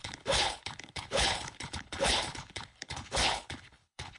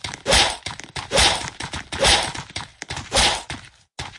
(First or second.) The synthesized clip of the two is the first